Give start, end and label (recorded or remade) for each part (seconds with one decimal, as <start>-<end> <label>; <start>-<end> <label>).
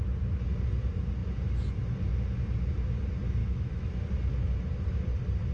0.0-3.4 recorded; 3.4-4.0 remade; 4.0-5.5 recorded